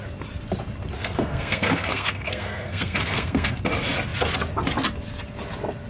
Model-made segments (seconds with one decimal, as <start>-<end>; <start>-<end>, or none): 1.0-3.6